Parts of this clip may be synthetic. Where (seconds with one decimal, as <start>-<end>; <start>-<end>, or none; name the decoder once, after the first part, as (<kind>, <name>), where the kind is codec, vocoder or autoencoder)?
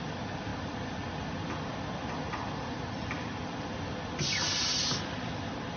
none